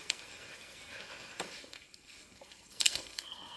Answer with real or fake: fake